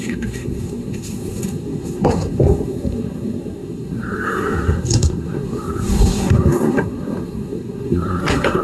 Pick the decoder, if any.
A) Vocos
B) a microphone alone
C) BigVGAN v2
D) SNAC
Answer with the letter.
D